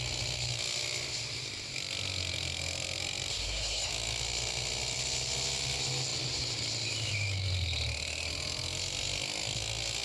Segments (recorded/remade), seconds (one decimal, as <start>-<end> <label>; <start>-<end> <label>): 0.0-3.3 recorded; 3.3-3.9 remade; 3.9-10.0 recorded